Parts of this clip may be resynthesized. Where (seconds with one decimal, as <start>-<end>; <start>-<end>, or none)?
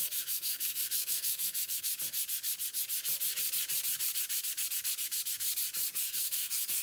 0.0-1.9; 6.0-6.8